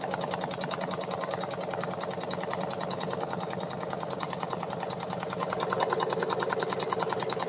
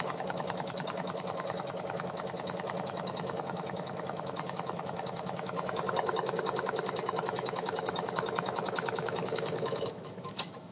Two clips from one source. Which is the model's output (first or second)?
second